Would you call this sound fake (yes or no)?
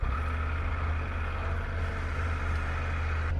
no